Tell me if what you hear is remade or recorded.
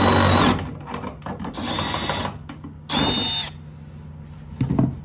recorded